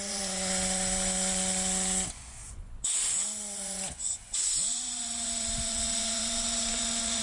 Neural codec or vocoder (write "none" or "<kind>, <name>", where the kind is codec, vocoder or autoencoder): vocoder, Vocos